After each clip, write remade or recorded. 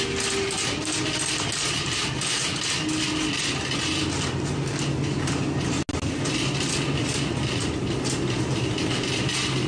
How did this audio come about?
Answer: recorded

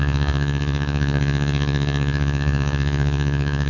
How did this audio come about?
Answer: remade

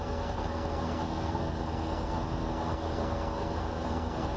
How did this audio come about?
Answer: remade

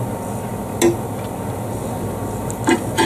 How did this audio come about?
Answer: recorded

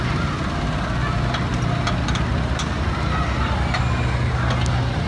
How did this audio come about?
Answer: recorded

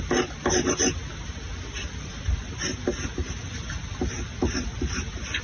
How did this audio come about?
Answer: recorded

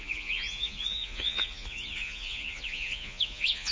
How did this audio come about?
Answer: remade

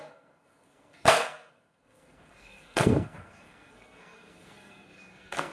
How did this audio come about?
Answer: remade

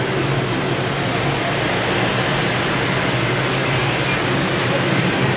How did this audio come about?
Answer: recorded